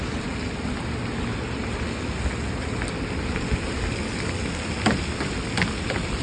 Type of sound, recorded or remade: recorded